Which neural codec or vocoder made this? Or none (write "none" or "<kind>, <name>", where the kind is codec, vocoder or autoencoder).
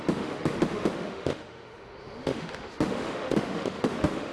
autoencoder, DAC-VAE